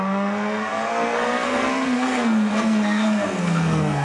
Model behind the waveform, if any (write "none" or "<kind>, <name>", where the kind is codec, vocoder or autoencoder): codec, SNAC